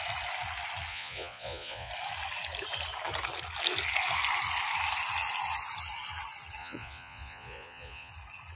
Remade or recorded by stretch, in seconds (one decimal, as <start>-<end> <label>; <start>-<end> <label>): 0.0-0.9 recorded; 0.9-1.9 remade; 1.9-6.6 recorded; 6.6-8.1 remade; 8.1-8.6 recorded